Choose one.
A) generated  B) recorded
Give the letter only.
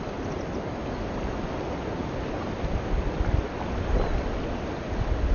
B